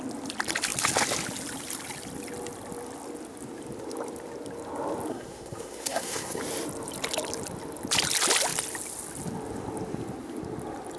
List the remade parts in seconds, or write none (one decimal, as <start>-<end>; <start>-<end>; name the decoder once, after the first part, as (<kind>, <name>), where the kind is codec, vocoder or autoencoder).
5.1-6.4 (codec, SNAC)